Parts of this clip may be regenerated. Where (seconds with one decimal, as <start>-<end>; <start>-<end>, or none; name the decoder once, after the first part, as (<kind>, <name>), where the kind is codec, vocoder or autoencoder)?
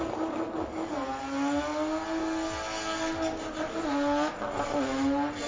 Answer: none